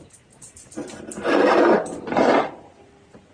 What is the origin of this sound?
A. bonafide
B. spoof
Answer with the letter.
A